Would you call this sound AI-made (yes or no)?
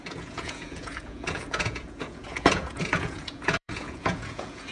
yes